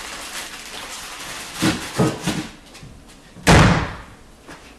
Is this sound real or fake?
real